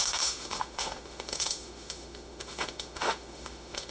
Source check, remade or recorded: remade